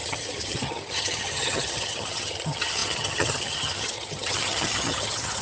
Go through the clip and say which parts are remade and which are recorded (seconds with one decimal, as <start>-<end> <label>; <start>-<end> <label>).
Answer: 0.0-5.4 remade